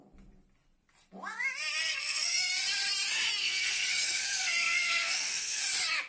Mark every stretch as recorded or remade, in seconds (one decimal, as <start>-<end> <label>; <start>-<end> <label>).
0.0-1.8 recorded; 1.8-2.5 remade; 2.5-3.4 recorded; 3.4-5.6 remade; 5.6-6.1 recorded